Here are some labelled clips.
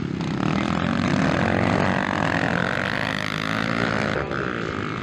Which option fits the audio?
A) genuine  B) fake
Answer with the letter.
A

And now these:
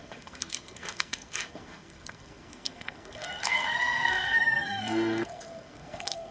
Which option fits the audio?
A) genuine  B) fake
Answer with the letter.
B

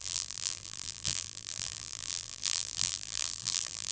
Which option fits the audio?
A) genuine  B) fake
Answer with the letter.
B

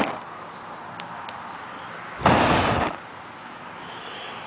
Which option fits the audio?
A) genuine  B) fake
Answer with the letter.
A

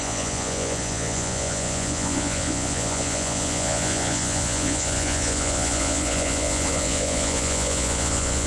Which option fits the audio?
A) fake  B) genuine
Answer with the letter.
A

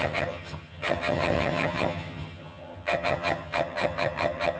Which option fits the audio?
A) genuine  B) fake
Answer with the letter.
B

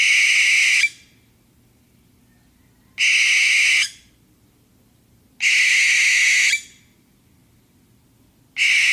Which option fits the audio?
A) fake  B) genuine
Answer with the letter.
B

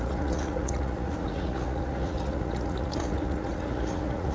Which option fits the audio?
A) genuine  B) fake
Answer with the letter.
B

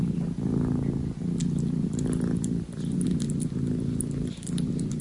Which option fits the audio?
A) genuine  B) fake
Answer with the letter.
A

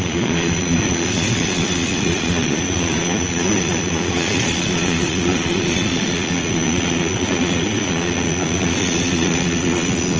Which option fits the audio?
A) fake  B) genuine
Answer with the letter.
A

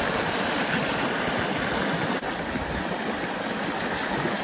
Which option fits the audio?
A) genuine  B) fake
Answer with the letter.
A